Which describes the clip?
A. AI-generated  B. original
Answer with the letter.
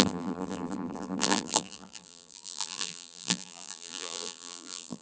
A